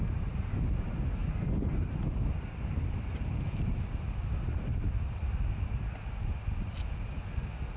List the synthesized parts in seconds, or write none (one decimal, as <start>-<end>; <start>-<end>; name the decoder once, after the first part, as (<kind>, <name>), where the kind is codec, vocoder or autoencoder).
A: 1.2-5.9 (vocoder, BigVGAN v2)